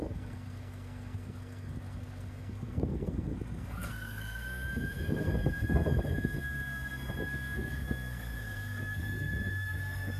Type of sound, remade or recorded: remade